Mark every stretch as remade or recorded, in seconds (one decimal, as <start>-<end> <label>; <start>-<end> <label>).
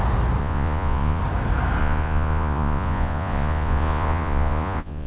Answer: 0.0-0.4 recorded; 0.4-1.2 remade; 1.2-1.8 recorded; 1.8-5.1 remade